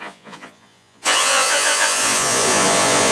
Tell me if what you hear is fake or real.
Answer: fake